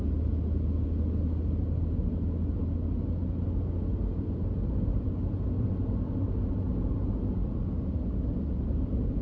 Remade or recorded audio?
recorded